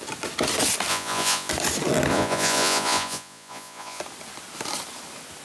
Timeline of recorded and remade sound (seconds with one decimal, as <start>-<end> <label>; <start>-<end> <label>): 0.0-0.9 recorded; 0.9-1.5 remade; 1.5-2.1 recorded; 2.1-4.0 remade; 4.0-5.4 recorded